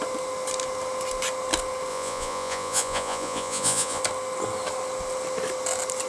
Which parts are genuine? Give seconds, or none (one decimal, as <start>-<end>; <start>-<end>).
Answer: 0.0-1.9; 4.0-6.1